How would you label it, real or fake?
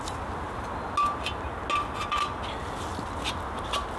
real